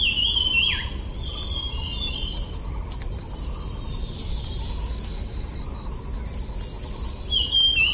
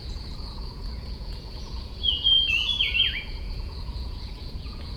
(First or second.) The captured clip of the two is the first